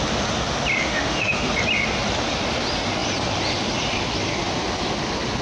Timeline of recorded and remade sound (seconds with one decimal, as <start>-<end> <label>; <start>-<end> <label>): 0.0-0.8 recorded; 0.8-1.5 remade; 1.5-5.4 recorded